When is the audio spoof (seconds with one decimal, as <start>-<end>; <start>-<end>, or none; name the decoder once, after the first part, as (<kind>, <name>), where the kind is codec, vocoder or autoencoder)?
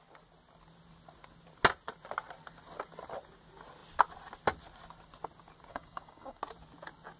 5.7-6.4 (codec, DAC)